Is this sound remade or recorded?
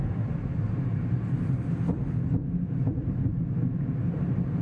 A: remade